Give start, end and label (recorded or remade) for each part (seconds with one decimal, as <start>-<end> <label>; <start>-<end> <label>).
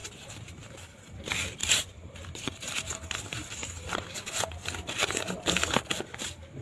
0.0-0.6 remade; 0.6-1.6 recorded; 1.6-4.3 remade; 4.3-6.6 recorded